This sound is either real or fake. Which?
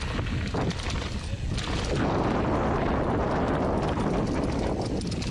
real